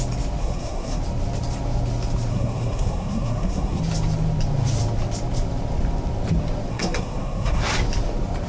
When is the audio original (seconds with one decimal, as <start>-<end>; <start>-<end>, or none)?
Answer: 0.0-0.4; 1.0-2.3; 3.8-6.7; 7.6-8.5